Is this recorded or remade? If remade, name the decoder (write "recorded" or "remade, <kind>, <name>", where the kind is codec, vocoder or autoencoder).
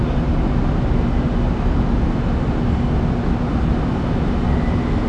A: recorded